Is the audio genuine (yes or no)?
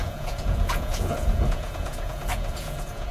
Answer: no